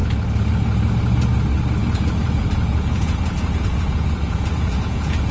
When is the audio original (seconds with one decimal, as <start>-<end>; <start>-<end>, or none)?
0.0-1.8